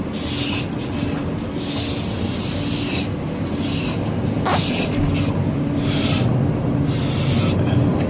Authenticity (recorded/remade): recorded